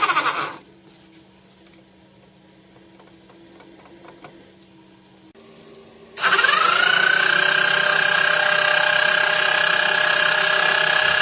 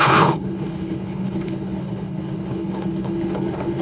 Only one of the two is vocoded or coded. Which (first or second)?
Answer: second